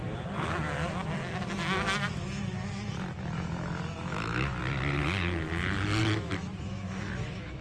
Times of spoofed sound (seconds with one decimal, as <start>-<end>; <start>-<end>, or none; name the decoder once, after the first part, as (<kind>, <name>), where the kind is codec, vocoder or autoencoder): 3.2-4.6 (autoencoder, DAC-VAE); 6.0-7.6